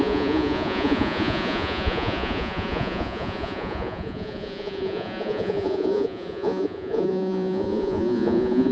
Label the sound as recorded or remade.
remade